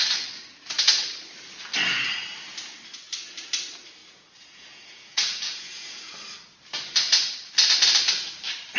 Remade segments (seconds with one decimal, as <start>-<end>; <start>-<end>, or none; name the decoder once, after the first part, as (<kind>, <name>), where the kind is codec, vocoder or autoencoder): 4.0-6.1 (vocoder, Vocos)